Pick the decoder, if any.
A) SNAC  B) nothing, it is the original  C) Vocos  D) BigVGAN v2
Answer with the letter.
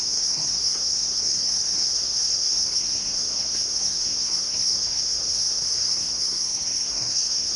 A